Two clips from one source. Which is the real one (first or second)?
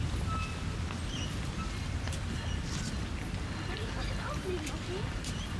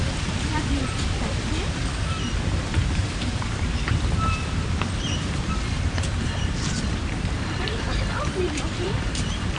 first